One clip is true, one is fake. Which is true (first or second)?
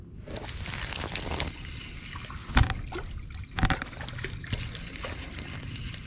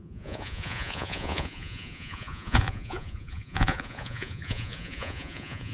first